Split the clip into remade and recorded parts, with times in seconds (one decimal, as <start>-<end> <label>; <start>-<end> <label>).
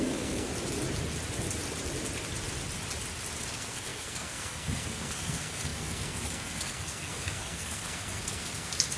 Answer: 0.0-0.5 remade; 0.5-3.4 recorded; 3.4-9.0 remade